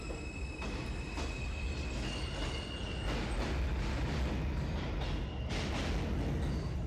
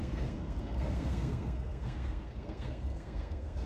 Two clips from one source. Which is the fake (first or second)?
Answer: second